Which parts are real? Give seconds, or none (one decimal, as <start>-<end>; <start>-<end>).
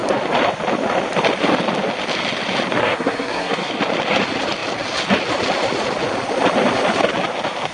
0.0-2.8; 3.7-7.7